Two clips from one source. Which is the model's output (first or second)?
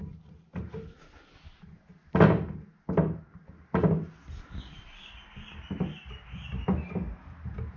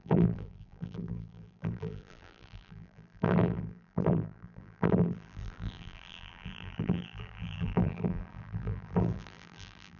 second